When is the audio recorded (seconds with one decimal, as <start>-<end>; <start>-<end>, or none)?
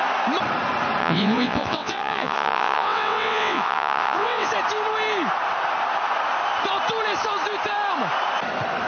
0.0-1.0; 4.5-8.9